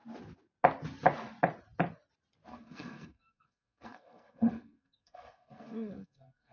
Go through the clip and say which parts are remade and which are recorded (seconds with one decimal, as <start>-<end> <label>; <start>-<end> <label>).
0.0-2.5 recorded; 2.5-6.5 remade